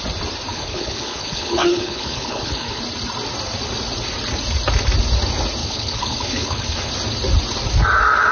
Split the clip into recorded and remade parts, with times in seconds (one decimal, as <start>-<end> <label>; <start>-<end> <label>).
0.0-0.5 recorded; 0.5-2.8 remade; 2.8-5.6 recorded; 5.6-6.9 remade; 6.9-8.3 recorded